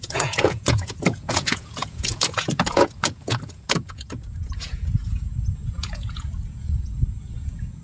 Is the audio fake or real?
fake